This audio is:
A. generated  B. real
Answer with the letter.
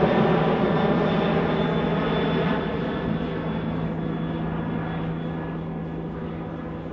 B